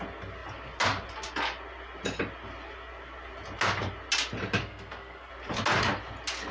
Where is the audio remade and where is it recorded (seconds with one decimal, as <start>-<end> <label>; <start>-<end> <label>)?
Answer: 0.0-4.6 recorded; 4.6-5.3 remade; 5.3-6.5 recorded